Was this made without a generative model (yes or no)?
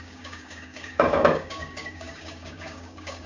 no